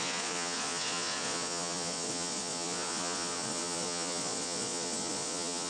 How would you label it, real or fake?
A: fake